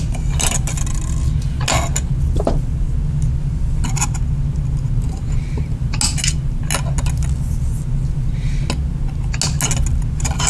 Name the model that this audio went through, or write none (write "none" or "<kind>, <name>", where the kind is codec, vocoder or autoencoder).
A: none